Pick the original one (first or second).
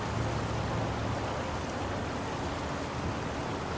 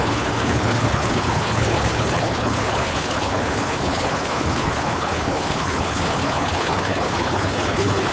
first